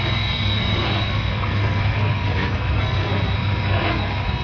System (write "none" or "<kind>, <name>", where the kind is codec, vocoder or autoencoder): codec, SNAC